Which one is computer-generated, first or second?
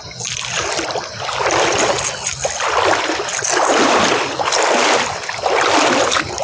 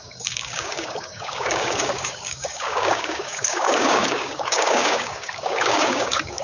second